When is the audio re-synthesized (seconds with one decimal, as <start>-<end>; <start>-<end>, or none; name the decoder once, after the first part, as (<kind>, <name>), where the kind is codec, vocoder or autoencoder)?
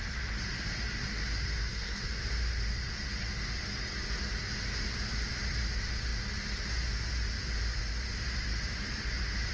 1.7-2.2 (codec, SNAC)